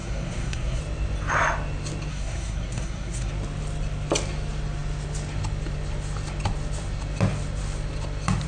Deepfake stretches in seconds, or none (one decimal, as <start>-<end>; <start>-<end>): 0.0-0.8; 2.1-3.3